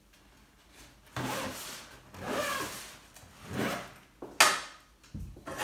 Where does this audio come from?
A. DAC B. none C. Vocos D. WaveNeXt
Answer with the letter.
B